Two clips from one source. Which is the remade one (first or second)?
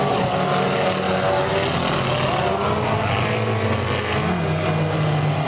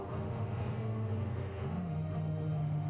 second